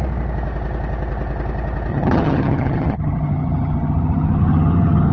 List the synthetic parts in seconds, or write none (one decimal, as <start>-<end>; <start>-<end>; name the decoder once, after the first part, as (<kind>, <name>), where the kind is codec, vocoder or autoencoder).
1.9-5.1 (vocoder, HiFi-GAN)